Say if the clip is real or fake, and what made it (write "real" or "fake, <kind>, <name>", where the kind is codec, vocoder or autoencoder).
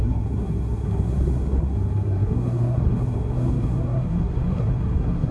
fake, codec, SNAC